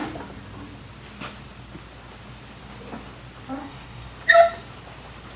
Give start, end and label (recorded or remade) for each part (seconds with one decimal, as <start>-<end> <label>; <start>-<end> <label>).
0.0-3.6 recorded; 3.6-4.1 remade; 4.1-5.4 recorded